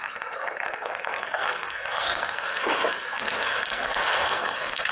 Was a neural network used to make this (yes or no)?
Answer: yes